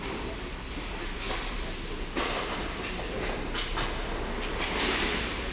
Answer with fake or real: real